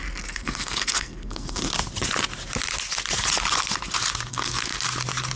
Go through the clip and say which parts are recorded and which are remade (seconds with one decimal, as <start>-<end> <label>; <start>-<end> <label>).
0.0-1.7 remade; 1.7-4.3 recorded; 4.3-4.7 remade; 4.7-5.4 recorded